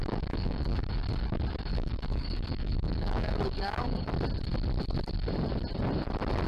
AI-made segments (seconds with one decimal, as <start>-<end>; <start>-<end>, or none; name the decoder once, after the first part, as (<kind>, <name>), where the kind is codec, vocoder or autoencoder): 0.0-0.9 (codec, DAC); 1.7-4.1